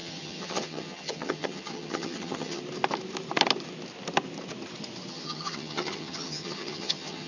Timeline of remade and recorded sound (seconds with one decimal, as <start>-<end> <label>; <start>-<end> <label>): 0.0-2.6 remade; 2.6-5.1 recorded; 5.1-7.3 remade

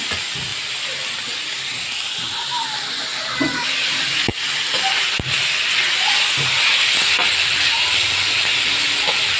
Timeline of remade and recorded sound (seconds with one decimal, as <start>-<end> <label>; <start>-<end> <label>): 0.0-9.4 recorded

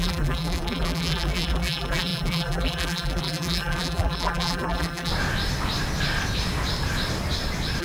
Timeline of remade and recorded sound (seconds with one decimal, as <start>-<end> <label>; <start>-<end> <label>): 0.0-5.1 remade; 5.1-7.8 recorded

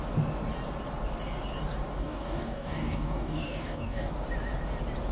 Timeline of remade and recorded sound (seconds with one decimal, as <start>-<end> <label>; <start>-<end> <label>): 0.0-2.0 recorded; 2.0-4.1 remade; 4.1-5.1 recorded

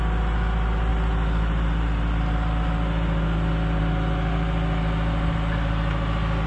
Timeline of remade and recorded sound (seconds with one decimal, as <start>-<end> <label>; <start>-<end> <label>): 0.0-6.5 recorded

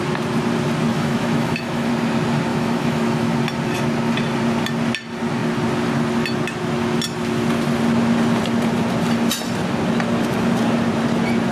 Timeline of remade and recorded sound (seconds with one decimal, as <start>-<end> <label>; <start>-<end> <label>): 0.0-0.9 recorded; 0.9-1.9 remade; 1.9-2.5 recorded; 2.5-3.3 remade; 3.3-11.5 recorded

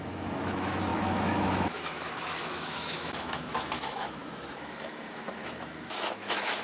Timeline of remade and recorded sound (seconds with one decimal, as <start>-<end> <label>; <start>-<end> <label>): 0.0-6.6 remade